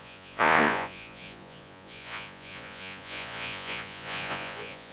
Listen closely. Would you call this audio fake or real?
fake